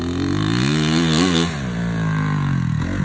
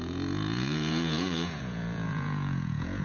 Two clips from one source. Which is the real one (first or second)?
first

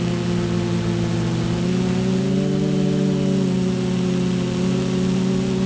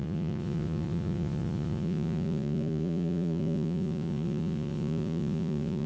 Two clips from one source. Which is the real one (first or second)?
first